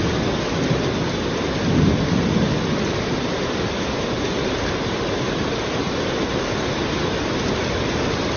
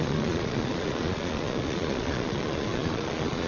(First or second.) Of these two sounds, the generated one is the second